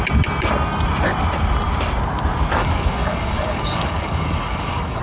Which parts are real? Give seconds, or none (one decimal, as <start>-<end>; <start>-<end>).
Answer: 0.0-2.6